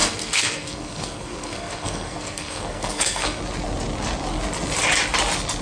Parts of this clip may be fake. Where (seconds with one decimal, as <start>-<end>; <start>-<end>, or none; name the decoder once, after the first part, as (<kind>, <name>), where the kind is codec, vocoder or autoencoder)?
0.0-3.4 (codec, SNAC)